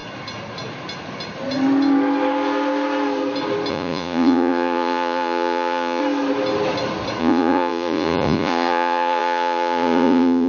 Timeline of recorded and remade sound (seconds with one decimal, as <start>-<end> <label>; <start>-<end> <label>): 0.0-3.7 recorded; 3.7-6.0 remade; 6.0-7.2 recorded; 7.2-10.5 remade